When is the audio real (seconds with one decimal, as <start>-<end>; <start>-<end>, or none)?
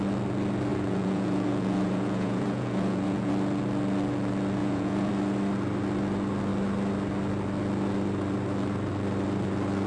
0.0-0.7; 3.3-4.6; 5.1-9.9